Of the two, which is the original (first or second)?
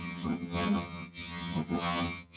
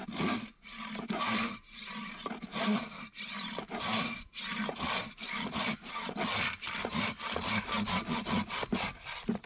second